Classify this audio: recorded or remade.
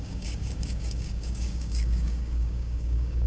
remade